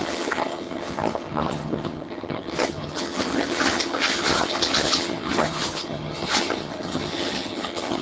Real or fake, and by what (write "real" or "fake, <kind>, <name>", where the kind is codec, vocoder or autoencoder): fake, vocoder, HiFi-GAN